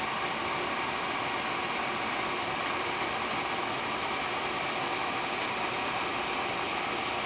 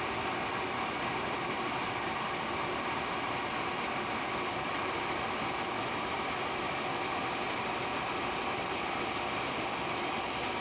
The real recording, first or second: first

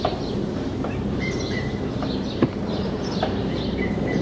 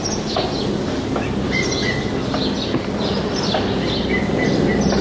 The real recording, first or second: second